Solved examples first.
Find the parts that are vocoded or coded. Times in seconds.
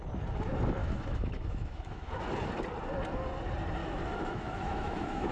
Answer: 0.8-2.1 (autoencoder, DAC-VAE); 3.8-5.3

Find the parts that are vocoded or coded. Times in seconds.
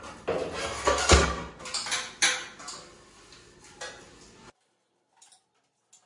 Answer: 0.6-1.6 (codec, SNAC)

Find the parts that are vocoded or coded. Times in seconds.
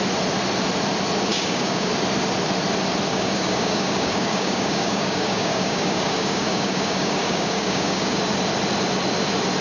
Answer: 1.3-1.9 (codec, DAC); 3.1-8.2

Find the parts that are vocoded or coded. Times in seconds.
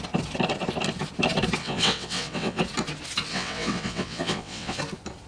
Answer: 1.6-2.6 (vocoder, WaveNeXt); 3.3-4.8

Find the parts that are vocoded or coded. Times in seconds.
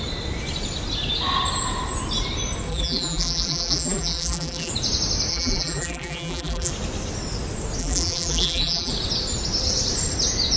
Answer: 2.7-4.7 (vocoder, BigVGAN v2); 5.3-6.7; 7.8-8.9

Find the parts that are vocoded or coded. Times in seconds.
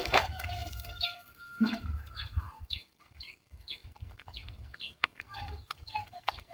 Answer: 0.0-6.5 (codec, SNAC)